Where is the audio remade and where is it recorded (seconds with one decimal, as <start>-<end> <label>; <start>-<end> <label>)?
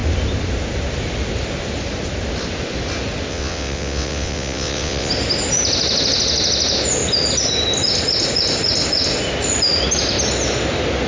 0.0-3.3 recorded; 3.3-5.1 remade; 5.1-11.1 recorded